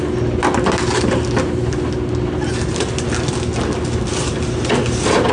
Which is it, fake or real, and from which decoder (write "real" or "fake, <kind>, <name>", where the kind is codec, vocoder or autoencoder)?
real